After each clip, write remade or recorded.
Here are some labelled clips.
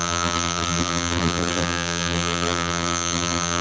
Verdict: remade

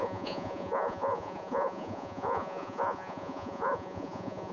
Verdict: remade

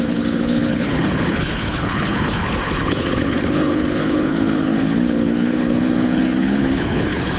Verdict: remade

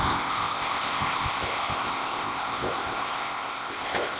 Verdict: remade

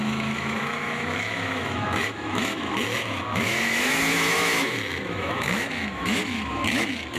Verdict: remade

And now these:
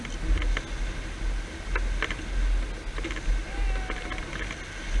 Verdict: recorded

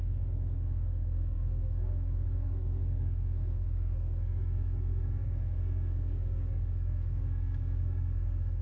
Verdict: remade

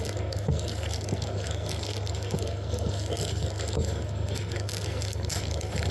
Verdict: remade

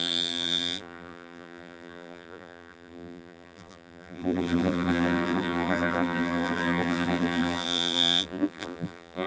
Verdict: remade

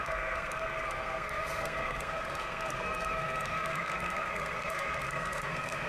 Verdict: remade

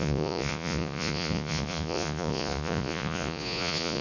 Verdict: remade